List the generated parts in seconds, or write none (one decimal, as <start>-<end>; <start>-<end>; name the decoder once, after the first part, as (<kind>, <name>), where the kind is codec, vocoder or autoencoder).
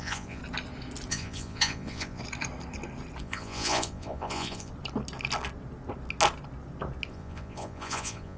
0.0-0.4 (vocoder, Vocos); 1.1-2.2; 3.2-4.7; 7.1-8.4